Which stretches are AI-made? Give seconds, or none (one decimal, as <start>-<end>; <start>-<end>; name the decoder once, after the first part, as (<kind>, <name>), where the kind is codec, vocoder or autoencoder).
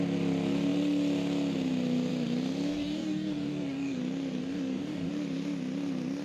2.7-4.0 (codec, DAC); 4.4-5.1